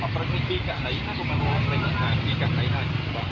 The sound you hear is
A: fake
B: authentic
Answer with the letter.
B